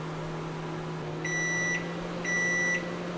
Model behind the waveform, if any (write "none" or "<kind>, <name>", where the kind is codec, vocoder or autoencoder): none